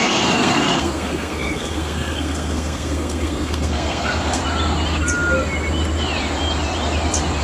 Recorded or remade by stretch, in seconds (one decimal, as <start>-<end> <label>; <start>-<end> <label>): 0.0-4.4 remade; 4.4-7.4 recorded